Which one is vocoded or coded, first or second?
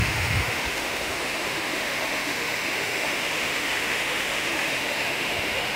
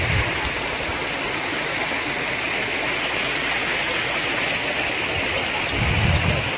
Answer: first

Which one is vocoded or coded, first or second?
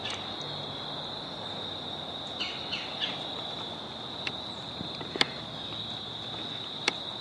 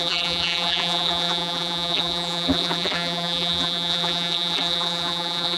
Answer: second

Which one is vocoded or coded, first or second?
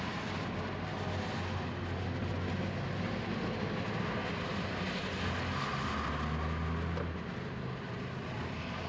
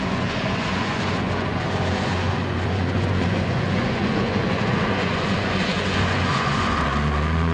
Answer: second